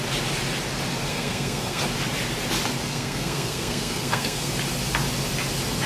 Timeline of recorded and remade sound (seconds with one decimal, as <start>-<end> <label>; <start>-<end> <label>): 0.0-1.1 recorded; 1.1-1.8 remade; 1.8-2.8 recorded; 2.8-4.5 remade; 4.5-5.9 recorded